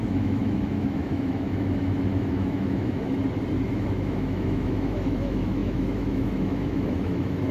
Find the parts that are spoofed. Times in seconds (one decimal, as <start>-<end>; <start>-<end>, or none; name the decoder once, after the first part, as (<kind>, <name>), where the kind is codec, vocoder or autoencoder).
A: 0.0-3.2 (autoencoder, DAC-VAE); 3.7-7.5

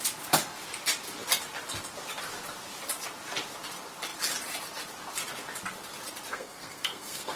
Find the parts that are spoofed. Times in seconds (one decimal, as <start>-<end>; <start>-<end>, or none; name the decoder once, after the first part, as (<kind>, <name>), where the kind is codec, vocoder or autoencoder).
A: 6.3-7.4 (codec, SNAC)